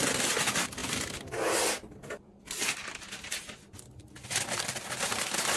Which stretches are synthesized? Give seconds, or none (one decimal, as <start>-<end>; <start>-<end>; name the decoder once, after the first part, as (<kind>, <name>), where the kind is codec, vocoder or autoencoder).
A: none